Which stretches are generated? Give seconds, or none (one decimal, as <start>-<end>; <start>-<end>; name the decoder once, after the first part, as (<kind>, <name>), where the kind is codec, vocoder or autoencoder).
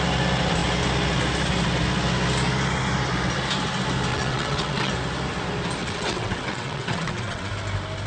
4.1-4.9 (vocoder, WaveNeXt); 5.8-7.5